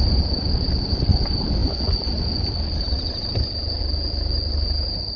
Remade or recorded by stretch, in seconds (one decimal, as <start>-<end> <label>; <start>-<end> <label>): 0.0-5.2 recorded